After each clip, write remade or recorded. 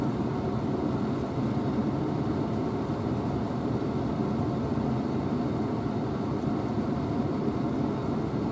recorded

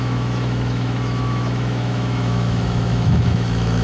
remade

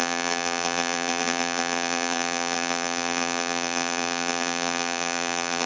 remade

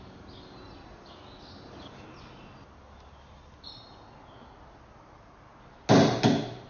recorded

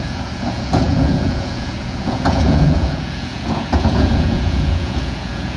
remade